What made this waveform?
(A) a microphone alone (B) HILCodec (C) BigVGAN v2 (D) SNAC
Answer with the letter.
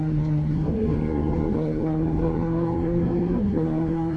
D